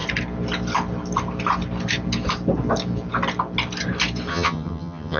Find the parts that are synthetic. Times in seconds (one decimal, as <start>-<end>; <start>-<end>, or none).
4.3-5.2